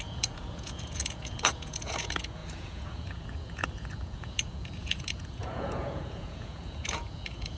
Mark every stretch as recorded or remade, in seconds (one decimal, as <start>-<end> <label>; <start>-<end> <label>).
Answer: 0.0-7.6 remade